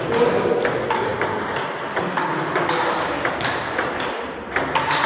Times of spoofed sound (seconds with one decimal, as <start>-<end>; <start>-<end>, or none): none